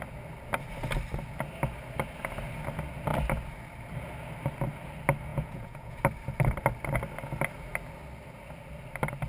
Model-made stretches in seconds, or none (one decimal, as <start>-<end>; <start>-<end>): 5.3-6.0